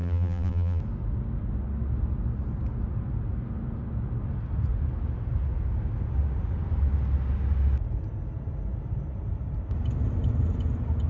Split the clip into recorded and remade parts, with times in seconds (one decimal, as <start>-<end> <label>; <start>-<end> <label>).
0.0-0.8 remade; 0.8-11.1 recorded